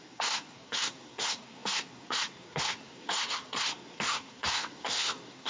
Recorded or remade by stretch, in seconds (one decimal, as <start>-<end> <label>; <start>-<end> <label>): 0.0-5.5 remade